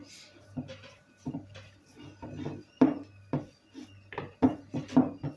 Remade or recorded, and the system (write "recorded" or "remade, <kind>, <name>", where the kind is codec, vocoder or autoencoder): remade, vocoder, BigVGAN v2